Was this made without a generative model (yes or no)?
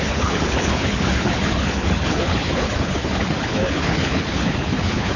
no